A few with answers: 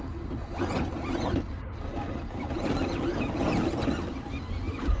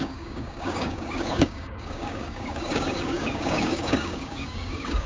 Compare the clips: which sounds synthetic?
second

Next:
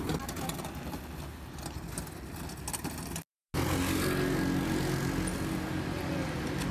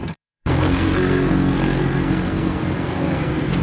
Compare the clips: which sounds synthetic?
second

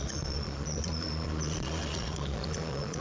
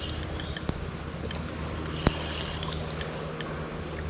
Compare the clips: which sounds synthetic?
first